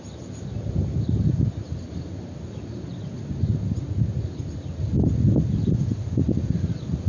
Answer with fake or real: real